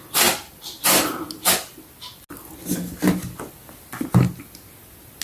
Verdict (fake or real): real